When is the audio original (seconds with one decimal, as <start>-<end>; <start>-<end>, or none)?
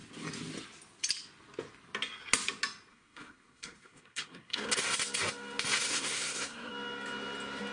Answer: 0.0-2.9; 4.7-5.9; 6.7-7.7